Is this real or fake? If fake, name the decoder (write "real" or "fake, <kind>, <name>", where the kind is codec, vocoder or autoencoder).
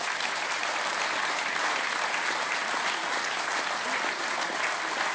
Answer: real